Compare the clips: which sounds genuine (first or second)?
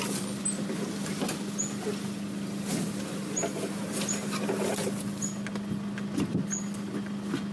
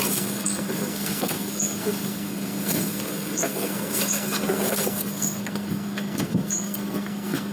first